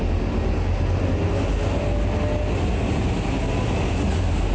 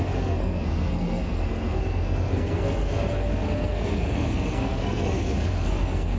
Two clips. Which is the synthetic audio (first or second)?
second